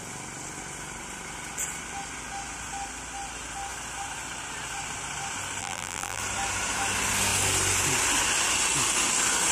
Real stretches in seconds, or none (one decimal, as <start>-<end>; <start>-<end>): 0.0-5.6; 6.2-9.5